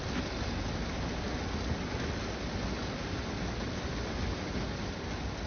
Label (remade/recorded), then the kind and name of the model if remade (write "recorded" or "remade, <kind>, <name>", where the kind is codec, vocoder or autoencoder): recorded